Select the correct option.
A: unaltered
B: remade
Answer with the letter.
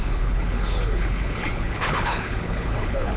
B